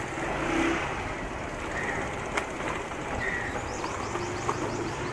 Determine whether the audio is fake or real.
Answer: real